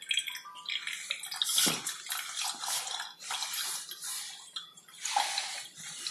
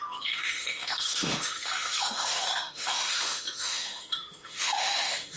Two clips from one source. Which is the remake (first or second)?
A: second